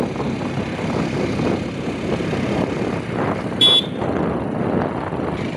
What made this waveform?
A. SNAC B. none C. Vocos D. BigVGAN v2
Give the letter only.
B